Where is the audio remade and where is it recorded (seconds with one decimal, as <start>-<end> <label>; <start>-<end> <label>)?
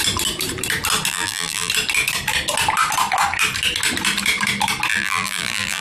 0.0-1.1 recorded; 1.1-1.7 remade; 1.7-4.9 recorded; 4.9-5.8 remade